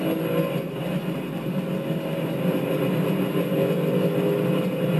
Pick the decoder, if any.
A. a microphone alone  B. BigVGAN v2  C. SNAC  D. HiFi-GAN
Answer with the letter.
A